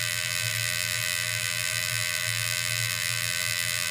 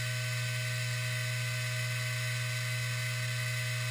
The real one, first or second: second